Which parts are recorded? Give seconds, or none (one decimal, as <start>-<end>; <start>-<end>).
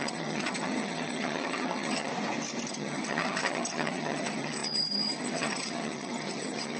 2.1-2.7